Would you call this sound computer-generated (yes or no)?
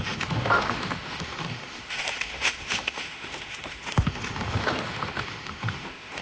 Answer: yes